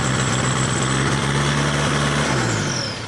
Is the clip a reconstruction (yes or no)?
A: no